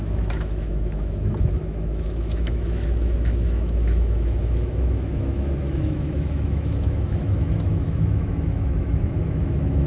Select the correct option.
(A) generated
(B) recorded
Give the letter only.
A